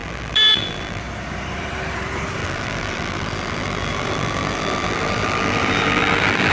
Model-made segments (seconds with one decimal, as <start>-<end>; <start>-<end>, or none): 0.0-1.0; 2.4-6.5